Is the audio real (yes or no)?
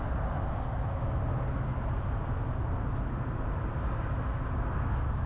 yes